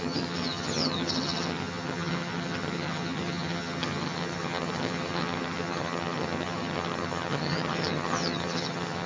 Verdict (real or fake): fake